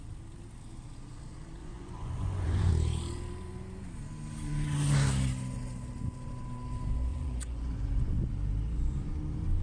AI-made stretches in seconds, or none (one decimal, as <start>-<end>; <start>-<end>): 1.6-2.7; 7.1-8.3